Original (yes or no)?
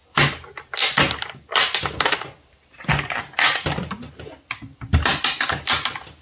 yes